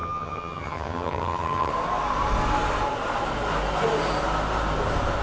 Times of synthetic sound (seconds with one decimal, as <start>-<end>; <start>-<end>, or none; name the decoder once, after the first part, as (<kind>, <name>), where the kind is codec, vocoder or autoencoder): 0.0-1.7 (vocoder, HiFi-GAN)